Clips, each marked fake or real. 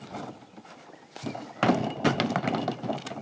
real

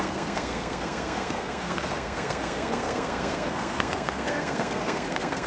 fake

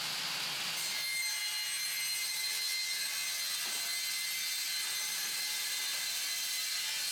real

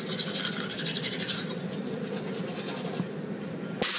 real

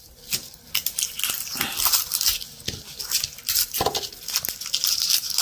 real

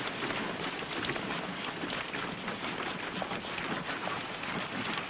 real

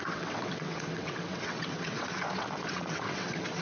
fake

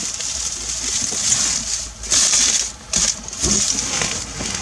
real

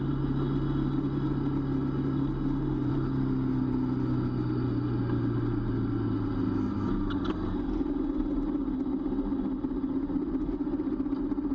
real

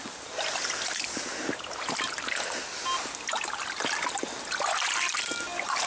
real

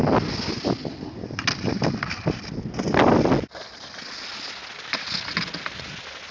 real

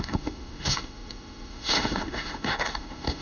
fake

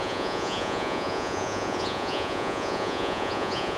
fake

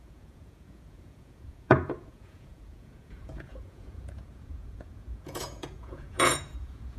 fake